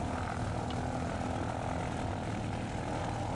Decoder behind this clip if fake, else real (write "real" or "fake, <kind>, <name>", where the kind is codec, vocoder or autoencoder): real